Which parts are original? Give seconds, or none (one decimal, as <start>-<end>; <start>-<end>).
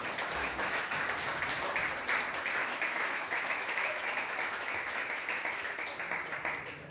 0.0-0.4; 1.0-2.6; 5.9-6.9